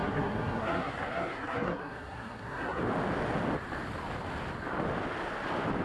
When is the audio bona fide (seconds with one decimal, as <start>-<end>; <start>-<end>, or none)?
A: 2.8-5.8